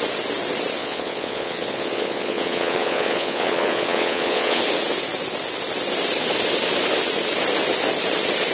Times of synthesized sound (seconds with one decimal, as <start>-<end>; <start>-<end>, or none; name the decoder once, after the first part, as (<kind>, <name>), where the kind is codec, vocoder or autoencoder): 0.8-4.6 (vocoder, Vocos)